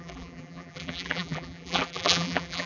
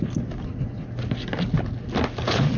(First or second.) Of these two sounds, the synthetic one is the first